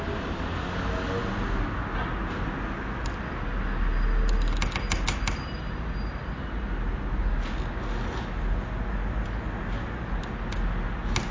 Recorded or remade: recorded